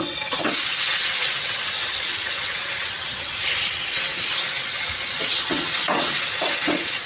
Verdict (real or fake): fake